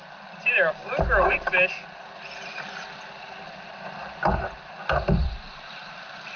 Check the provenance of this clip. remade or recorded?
recorded